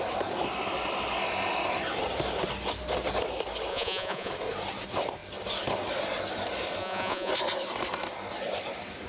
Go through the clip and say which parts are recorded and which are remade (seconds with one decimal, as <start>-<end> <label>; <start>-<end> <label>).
0.0-3.7 recorded; 3.7-4.3 remade; 4.3-6.8 recorded; 6.8-7.3 remade; 7.3-9.1 recorded